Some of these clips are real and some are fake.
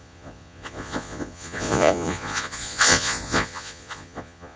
fake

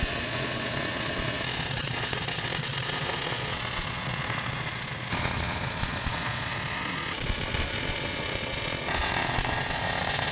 fake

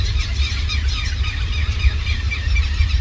real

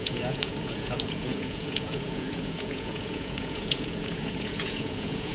fake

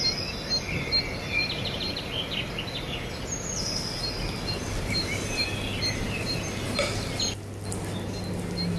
real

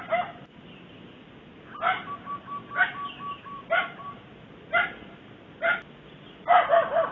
real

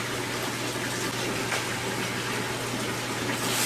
real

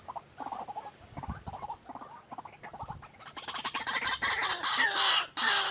real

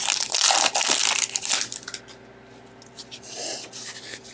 real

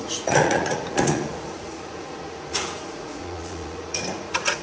fake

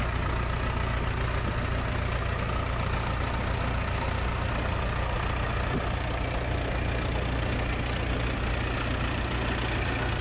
real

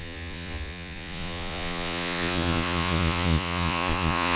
fake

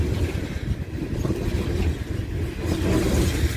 real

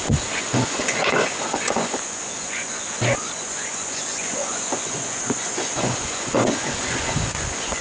fake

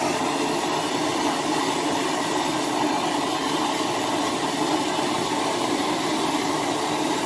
real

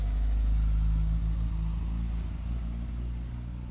real